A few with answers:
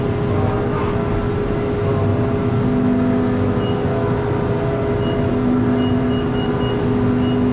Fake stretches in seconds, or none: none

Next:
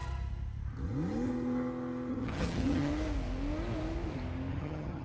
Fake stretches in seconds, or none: 2.1-2.9 (vocoder, HiFi-GAN); 4.5-5.0

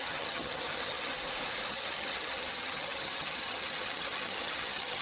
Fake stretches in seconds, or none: 0.0-1.1 (vocoder, HiFi-GAN); 1.7-5.0

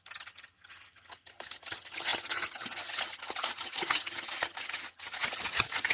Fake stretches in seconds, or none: 0.0-5.9 (vocoder, HiFi-GAN)

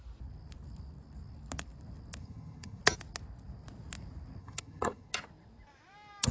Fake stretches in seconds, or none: 2.2-2.8 (vocoder, HiFi-GAN); 4.4-5.1

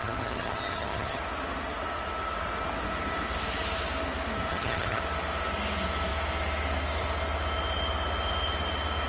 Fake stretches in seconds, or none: 0.0-1.2 (vocoder, HiFi-GAN); 4.5-5.0

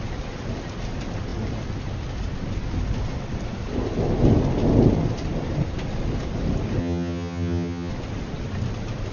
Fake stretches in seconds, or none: 6.8-7.9 (vocoder, HiFi-GAN)

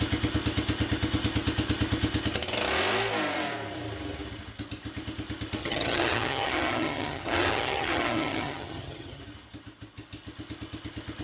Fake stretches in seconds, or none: 5.6-9.2 (vocoder, HiFi-GAN)